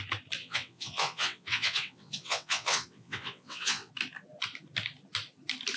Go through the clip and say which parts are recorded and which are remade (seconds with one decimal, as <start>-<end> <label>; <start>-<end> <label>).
0.0-0.4 recorded; 0.4-3.9 remade; 3.9-5.8 recorded